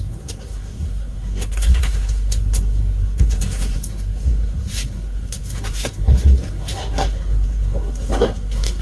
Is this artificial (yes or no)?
yes